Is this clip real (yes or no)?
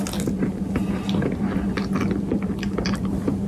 yes